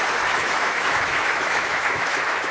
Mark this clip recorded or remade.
remade